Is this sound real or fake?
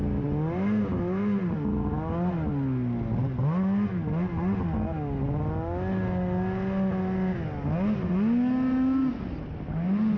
real